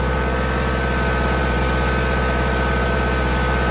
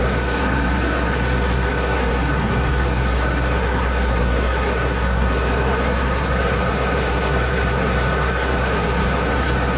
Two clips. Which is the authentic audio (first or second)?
first